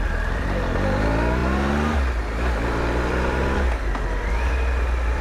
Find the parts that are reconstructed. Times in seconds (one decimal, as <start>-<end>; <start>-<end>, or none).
0.0-1.4; 4.5-5.2